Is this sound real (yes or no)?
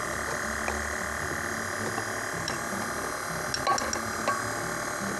yes